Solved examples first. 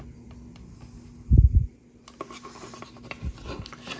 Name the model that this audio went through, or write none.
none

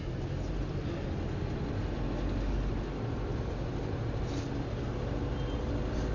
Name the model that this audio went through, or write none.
none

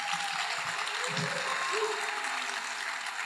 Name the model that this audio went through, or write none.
none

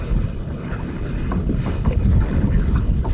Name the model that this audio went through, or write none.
codec, HILCodec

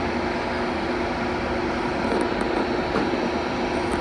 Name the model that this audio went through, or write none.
none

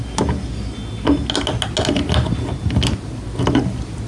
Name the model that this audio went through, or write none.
none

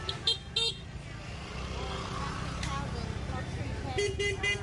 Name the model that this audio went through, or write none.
none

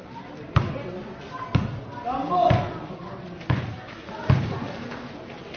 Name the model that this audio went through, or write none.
none